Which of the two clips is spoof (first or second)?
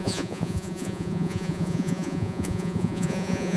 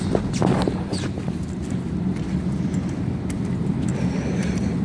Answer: first